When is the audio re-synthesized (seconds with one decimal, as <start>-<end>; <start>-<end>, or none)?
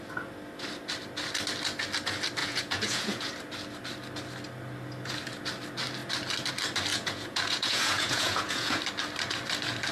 2.4-3.3; 6.9-8.8